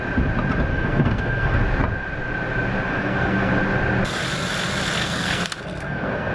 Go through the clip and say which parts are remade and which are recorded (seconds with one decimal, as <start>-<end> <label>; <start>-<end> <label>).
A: 0.0-0.7 recorded; 0.7-1.6 remade; 1.6-2.9 recorded; 2.9-3.5 remade; 3.5-5.0 recorded; 5.0-6.3 remade

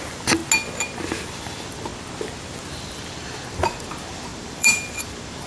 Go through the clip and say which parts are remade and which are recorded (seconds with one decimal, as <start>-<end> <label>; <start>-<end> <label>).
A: 0.0-0.4 remade; 0.4-1.3 recorded; 1.3-1.9 remade; 1.9-2.7 recorded; 2.7-5.5 remade

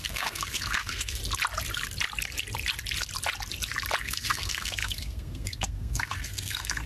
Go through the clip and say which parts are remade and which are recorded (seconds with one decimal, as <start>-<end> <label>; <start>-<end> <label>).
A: 0.0-1.2 remade; 1.2-4.0 recorded; 4.0-6.9 remade

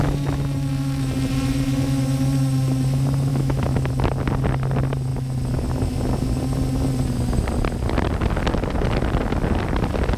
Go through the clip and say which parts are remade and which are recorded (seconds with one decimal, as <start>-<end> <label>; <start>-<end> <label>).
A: 0.0-3.3 recorded; 3.3-3.9 remade; 3.9-10.2 recorded

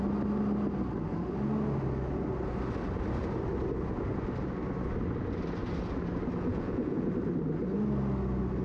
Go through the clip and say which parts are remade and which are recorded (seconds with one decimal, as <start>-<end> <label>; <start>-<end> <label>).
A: 0.0-6.5 recorded; 6.5-7.1 remade; 7.1-8.6 recorded

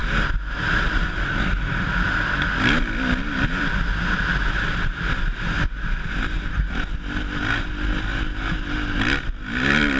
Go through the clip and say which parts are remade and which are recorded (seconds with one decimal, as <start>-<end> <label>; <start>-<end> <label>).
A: 0.0-10.0 recorded

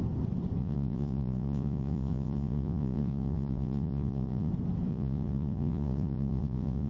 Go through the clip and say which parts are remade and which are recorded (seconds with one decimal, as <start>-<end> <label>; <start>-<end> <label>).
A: 0.0-0.6 recorded; 0.6-4.5 remade; 4.5-4.9 recorded; 4.9-6.9 remade

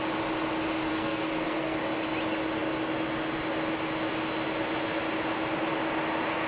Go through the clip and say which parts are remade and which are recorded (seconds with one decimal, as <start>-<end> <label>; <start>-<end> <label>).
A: 0.0-0.9 recorded; 0.9-1.8 remade; 1.8-6.5 recorded